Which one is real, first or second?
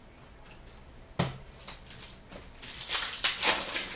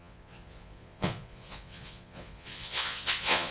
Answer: first